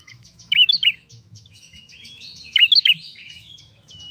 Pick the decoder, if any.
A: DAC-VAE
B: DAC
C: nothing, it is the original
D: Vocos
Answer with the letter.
A